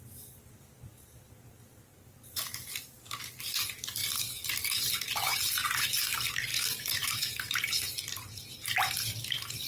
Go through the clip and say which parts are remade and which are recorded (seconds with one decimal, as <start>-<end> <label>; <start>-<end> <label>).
0.0-1.9 recorded; 1.9-2.5 remade; 2.5-6.5 recorded; 6.5-8.0 remade; 8.0-9.7 recorded